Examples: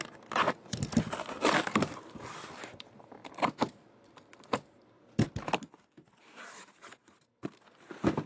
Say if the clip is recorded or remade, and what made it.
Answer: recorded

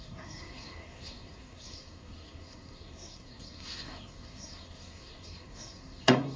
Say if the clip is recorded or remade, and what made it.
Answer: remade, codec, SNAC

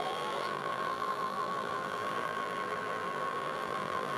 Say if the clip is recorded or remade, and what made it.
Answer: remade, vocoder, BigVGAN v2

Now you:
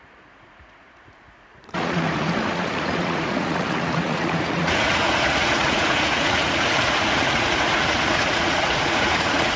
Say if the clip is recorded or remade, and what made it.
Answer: remade, vocoder, Vocos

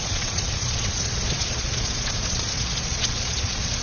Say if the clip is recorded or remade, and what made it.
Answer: remade, vocoder, Vocos